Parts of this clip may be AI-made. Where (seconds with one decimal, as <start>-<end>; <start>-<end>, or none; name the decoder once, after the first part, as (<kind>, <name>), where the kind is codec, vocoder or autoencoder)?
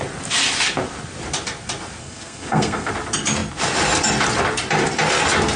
2.0-2.9 (codec, SNAC)